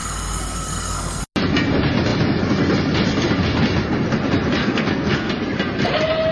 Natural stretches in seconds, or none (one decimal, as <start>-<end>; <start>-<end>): 1.2-4.6; 5.3-6.3